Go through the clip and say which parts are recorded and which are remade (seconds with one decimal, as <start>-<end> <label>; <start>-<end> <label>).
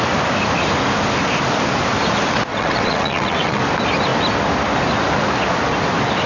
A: 0.0-2.5 recorded; 2.5-3.6 remade; 3.6-6.3 recorded